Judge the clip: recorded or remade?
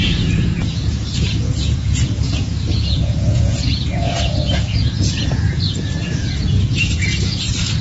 remade